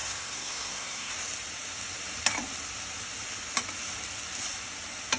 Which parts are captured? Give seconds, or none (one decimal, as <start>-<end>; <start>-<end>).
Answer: 1.1-5.2